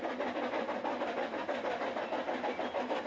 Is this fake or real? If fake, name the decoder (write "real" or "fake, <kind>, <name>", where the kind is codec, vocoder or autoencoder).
real